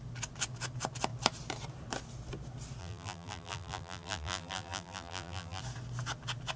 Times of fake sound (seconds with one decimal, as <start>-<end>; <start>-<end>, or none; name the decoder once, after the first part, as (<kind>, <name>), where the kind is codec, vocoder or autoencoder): 2.8-5.6 (vocoder, BigVGAN v2)